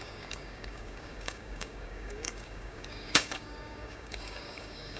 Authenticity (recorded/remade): remade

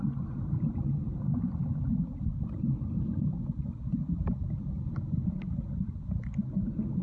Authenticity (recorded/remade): recorded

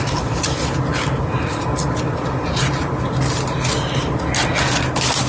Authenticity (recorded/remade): recorded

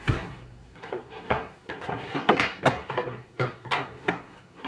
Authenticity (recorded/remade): remade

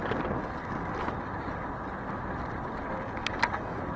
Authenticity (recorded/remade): recorded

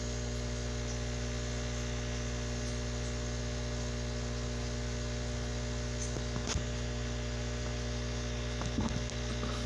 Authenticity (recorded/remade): recorded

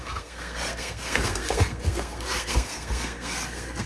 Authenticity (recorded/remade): remade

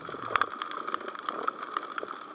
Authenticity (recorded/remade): recorded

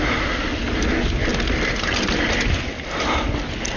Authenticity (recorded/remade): recorded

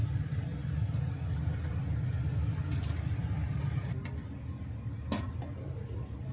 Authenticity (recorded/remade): recorded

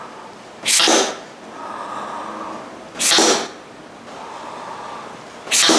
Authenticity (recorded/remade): recorded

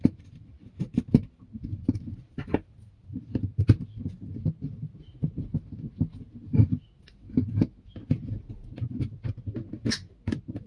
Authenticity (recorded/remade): recorded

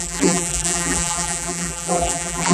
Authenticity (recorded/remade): remade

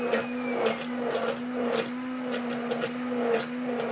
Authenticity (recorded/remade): recorded